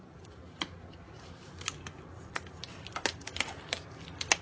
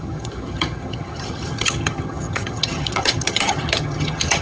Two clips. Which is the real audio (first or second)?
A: first